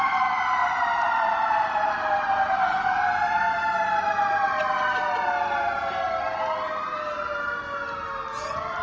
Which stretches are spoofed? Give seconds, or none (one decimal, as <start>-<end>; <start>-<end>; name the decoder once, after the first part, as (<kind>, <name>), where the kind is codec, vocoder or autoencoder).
0.6-1.9 (vocoder, BigVGAN v2)